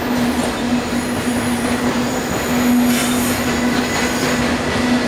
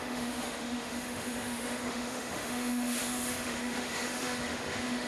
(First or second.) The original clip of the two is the first